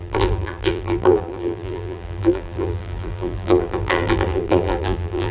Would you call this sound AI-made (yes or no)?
yes